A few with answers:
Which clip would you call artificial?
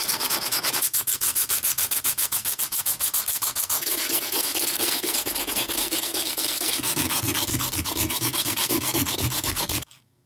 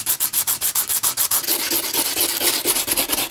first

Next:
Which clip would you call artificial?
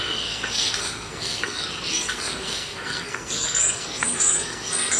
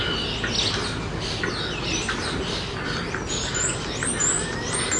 first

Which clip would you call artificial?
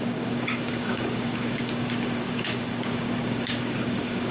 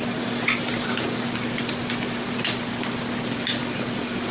first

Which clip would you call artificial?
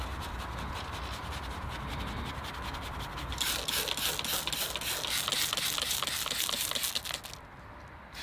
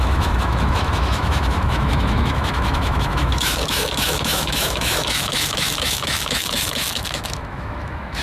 second